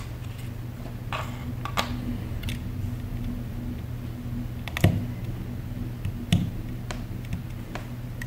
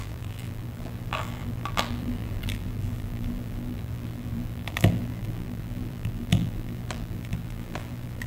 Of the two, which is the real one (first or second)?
first